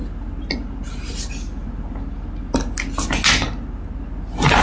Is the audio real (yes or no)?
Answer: yes